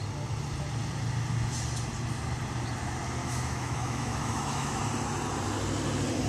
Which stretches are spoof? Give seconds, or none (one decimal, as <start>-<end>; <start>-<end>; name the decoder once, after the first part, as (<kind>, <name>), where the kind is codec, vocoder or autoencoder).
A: 3.2-4.8 (autoencoder, DAC-VAE)